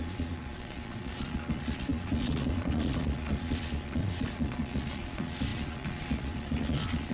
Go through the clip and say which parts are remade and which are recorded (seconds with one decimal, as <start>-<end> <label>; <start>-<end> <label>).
0.0-7.1 remade

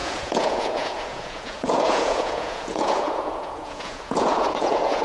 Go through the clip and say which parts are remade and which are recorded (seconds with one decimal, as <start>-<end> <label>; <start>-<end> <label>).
0.0-5.0 remade

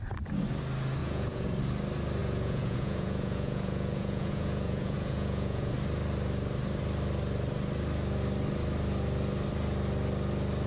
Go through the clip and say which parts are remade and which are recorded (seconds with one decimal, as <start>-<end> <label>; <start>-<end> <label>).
0.0-1.0 recorded; 1.0-1.6 remade; 1.6-2.2 recorded; 2.2-5.7 remade; 5.7-10.7 recorded

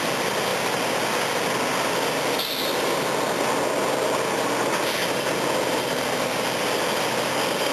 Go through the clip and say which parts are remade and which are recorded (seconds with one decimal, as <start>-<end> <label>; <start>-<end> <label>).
0.0-7.7 recorded

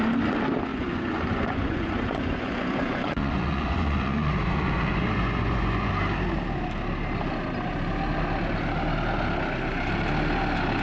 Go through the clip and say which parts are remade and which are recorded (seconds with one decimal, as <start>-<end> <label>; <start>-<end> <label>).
0.0-0.7 recorded; 0.7-5.9 remade; 5.9-10.8 recorded

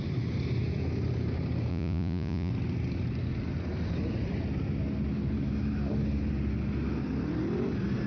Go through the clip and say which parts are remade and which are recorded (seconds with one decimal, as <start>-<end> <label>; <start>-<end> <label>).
0.0-1.7 recorded; 1.7-2.5 remade; 2.5-8.1 recorded

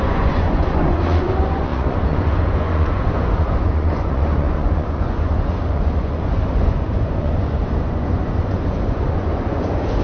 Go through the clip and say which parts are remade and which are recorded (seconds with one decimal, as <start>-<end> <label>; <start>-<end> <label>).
0.0-10.0 remade

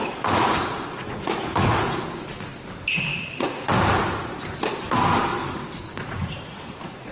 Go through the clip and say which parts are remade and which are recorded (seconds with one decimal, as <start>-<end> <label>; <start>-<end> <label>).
0.0-2.0 remade; 2.0-3.1 recorded; 3.1-4.6 remade; 4.6-5.3 recorded; 5.3-7.1 remade